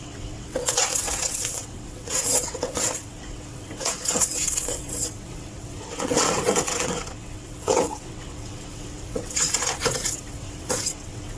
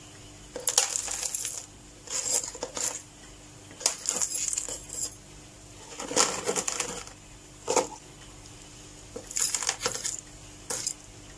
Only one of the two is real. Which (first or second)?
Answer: second